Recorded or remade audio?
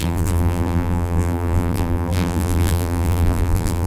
remade